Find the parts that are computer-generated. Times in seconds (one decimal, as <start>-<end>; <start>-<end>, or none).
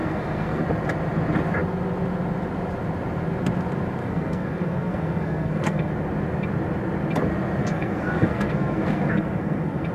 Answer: 0.0-0.6; 4.0-5.9; 7.6-9.9